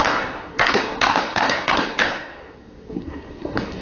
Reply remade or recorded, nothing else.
remade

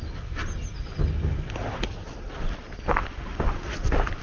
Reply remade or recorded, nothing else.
recorded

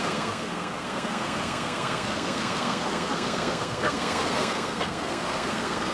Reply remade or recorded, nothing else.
remade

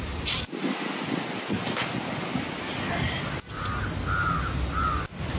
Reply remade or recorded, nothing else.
recorded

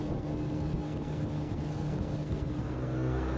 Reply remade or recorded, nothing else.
remade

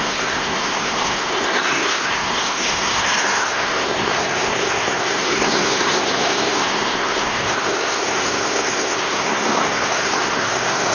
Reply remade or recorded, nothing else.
remade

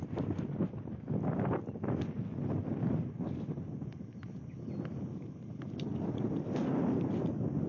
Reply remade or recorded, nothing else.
recorded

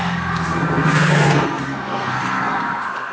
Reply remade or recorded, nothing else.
remade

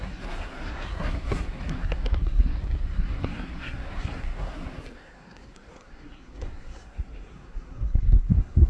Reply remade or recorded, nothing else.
remade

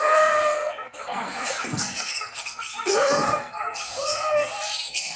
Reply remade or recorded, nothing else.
remade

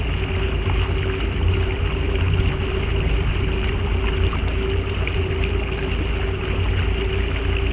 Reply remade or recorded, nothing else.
recorded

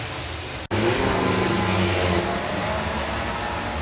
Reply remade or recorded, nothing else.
recorded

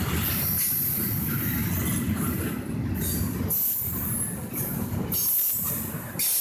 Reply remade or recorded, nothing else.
recorded